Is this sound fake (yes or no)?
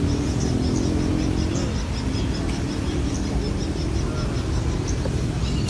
no